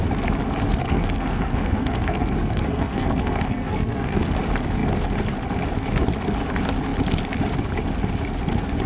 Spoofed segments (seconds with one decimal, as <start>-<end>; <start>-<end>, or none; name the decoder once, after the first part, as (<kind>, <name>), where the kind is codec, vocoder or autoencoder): 0.8-4.2 (codec, SNAC)